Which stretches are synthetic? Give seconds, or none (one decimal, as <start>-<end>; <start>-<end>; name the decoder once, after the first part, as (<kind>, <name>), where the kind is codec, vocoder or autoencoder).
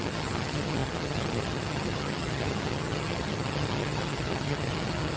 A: 0.0-5.2 (vocoder, HiFi-GAN)